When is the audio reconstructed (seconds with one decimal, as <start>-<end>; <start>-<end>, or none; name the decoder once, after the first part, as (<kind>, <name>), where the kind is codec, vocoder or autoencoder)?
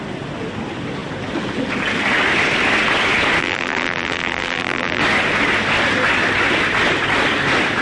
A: 3.4-5.0 (vocoder, BigVGAN v2)